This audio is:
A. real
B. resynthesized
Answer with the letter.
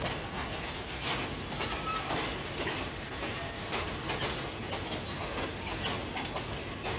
A